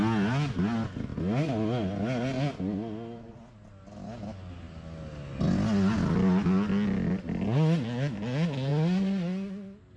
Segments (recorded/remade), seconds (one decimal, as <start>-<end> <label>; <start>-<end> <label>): 0.0-10.0 recorded